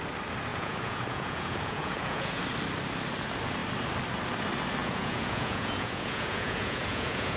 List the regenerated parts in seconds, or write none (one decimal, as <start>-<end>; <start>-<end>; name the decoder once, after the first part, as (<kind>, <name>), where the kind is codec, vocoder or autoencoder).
0.5-2.4 (vocoder, Vocos); 4.8-7.4